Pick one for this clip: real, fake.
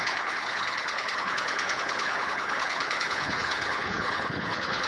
fake